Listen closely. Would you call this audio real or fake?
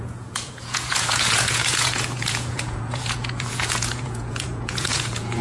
fake